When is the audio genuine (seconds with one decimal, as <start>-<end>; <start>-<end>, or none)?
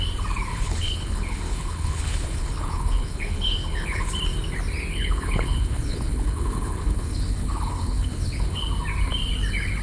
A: 0.0-0.5; 4.1-4.9; 8.6-9.8